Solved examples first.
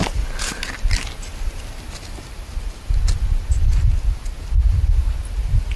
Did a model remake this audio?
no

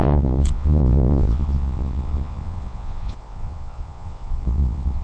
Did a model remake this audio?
yes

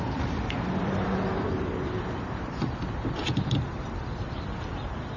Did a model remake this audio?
yes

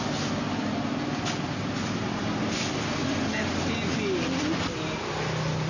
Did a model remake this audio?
no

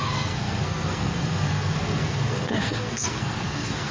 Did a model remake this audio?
yes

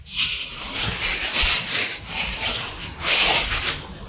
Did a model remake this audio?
yes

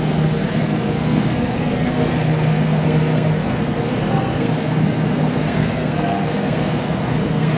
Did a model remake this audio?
yes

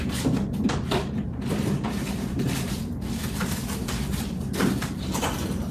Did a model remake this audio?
yes